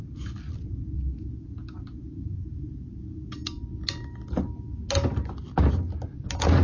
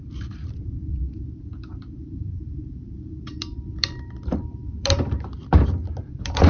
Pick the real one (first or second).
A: first